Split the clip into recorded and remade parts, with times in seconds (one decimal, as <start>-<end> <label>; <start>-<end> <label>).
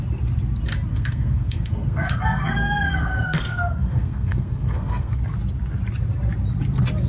0.0-0.9 recorded; 0.9-5.2 remade; 5.2-7.1 recorded